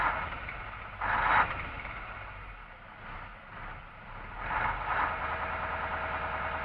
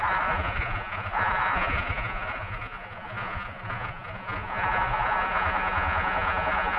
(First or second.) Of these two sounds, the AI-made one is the second